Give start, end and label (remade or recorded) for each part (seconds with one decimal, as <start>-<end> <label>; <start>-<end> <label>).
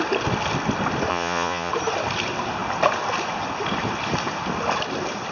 0.0-1.1 recorded; 1.1-1.7 remade; 1.7-5.3 recorded